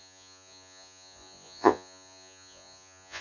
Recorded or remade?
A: remade